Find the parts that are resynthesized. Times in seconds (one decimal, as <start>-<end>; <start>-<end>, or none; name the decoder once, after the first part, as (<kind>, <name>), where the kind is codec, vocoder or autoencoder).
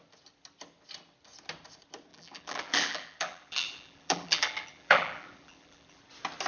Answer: 2.1-6.0 (vocoder, BigVGAN v2)